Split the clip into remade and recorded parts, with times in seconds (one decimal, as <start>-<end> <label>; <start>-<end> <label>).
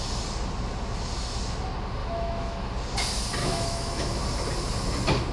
0.0-2.0 recorded; 2.0-2.7 remade; 2.7-3.4 recorded; 3.4-4.2 remade; 4.2-5.3 recorded